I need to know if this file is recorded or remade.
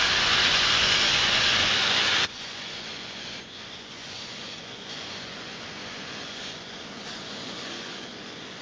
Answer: remade